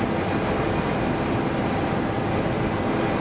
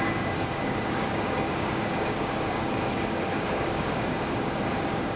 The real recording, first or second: first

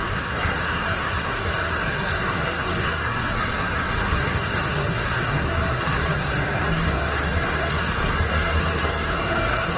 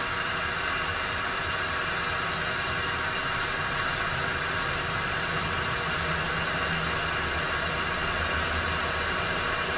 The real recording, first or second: second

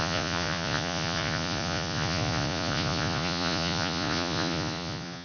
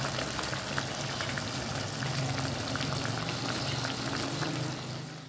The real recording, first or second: second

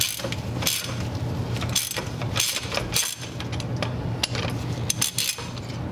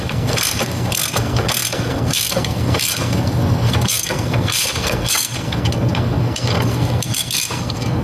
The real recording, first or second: first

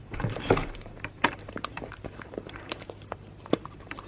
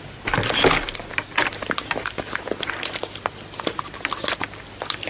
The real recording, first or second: second